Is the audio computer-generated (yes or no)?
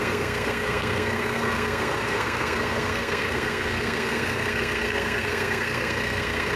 yes